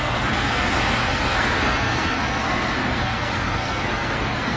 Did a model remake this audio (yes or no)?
yes